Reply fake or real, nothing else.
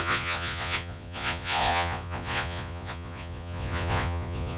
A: fake